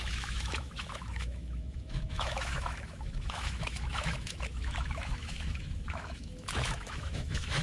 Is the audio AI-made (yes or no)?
yes